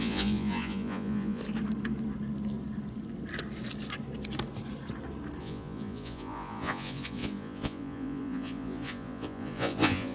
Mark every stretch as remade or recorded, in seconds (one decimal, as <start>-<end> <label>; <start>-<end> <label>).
0.0-1.4 remade; 1.4-5.4 recorded; 5.4-10.1 remade